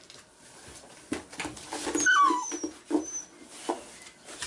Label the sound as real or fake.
real